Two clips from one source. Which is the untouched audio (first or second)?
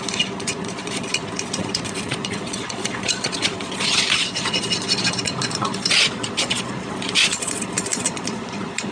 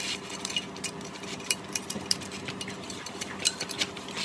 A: second